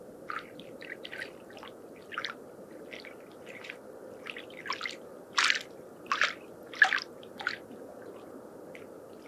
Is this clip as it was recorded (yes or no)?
no